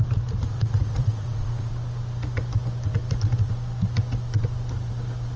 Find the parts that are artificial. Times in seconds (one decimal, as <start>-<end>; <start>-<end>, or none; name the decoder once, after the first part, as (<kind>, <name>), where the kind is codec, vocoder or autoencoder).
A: 0.4-1.7 (vocoder, Vocos)